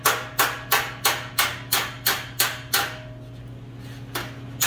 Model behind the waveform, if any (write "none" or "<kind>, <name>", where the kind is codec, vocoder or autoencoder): none